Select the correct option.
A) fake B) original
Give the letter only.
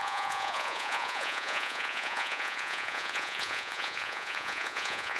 A